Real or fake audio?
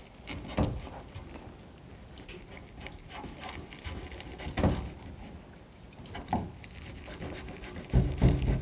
real